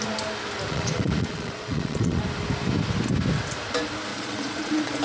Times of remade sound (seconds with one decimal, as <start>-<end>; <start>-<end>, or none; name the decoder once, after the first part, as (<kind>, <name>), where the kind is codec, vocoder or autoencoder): 0.7-2.2 (vocoder, Vocos); 4.1-5.0